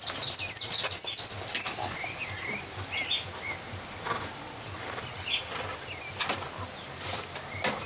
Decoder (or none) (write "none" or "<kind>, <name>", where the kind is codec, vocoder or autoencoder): none